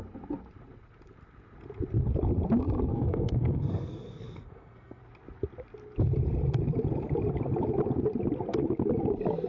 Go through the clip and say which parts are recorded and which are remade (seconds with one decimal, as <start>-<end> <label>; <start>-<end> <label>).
0.0-2.9 recorded; 2.9-5.0 remade; 5.0-9.5 recorded